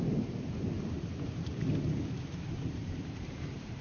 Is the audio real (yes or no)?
no